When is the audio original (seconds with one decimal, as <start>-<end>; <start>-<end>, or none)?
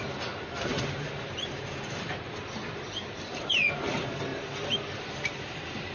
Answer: none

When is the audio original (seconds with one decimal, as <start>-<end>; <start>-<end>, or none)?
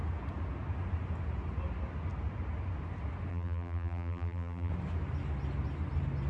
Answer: 0.0-3.3; 4.7-6.3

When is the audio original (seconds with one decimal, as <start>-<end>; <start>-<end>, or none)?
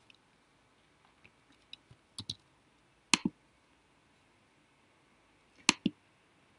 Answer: 0.0-6.6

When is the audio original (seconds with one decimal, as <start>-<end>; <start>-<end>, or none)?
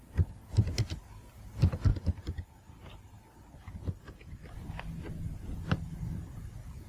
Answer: 0.0-6.9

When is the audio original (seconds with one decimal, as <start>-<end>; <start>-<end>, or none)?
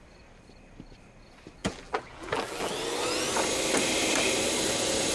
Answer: 0.0-1.6; 2.7-5.1